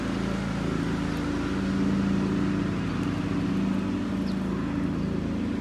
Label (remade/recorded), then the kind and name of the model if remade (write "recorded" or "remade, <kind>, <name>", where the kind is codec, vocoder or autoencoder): recorded